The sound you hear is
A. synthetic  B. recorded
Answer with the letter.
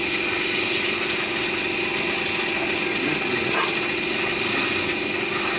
B